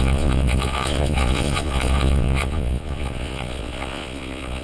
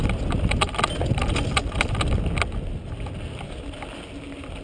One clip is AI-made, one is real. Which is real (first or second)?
second